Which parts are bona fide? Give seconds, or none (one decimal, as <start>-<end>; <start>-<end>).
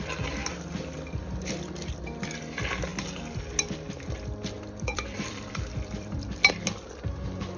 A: 0.0-4.9; 6.5-7.6